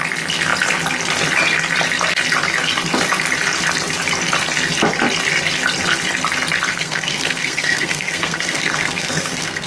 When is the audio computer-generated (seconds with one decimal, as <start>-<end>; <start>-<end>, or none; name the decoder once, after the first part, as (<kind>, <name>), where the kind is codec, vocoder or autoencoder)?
6.7-9.7 (codec, SNAC)